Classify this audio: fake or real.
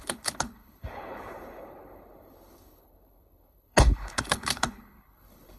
fake